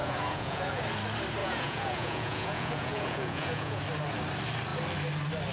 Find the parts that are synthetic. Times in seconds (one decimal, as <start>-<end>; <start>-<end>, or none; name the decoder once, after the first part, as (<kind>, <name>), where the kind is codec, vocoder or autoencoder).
0.0-0.8 (vocoder, Vocos); 1.4-3.8